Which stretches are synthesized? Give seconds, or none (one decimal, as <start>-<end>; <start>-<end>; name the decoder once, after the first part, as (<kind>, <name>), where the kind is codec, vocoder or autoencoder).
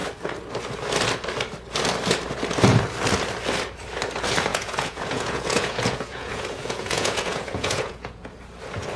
4.5-8.3 (vocoder, Vocos)